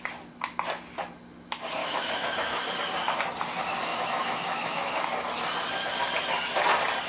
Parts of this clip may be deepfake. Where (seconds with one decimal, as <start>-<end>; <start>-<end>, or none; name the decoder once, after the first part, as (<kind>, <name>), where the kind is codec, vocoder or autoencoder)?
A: 1.8-2.7 (autoencoder, DAC-VAE); 3.9-5.0